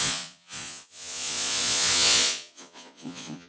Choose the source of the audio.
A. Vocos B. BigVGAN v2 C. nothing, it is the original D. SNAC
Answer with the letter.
A